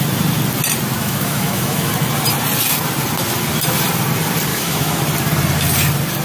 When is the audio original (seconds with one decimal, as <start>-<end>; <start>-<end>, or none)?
0.0-1.0; 1.9-4.5; 5.0-6.2